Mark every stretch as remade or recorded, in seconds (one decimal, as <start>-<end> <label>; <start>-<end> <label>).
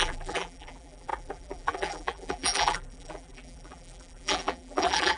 0.0-5.2 remade